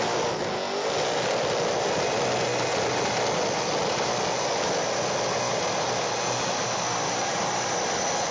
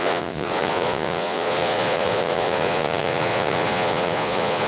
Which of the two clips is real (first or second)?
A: first